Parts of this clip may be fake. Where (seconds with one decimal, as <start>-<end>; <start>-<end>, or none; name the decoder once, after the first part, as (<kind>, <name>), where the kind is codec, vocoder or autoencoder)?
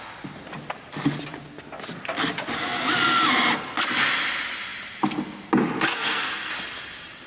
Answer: 5.9-6.5 (codec, SNAC)